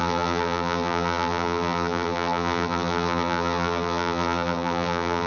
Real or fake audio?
fake